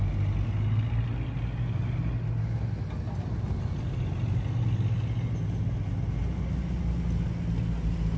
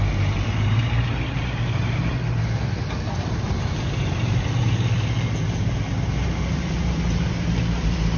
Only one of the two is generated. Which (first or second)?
second